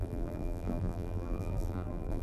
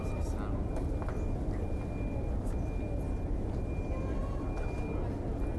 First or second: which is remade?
first